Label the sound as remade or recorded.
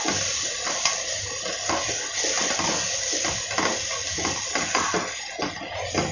recorded